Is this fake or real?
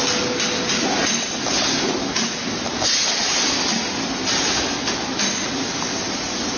real